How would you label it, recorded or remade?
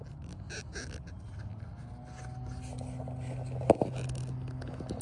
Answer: recorded